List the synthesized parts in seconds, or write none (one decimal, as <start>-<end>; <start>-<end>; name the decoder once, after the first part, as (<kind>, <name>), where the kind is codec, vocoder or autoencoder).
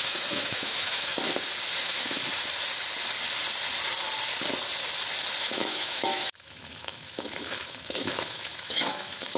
0.0-1.1 (autoencoder, DAC-VAE); 1.8-2.2; 5.4-9.4